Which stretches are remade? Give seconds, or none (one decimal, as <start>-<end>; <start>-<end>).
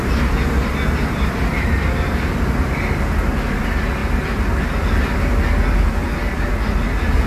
none